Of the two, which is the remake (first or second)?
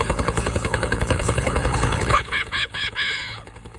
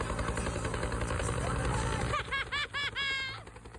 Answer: first